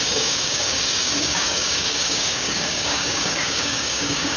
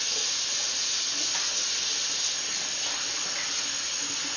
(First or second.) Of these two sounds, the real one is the second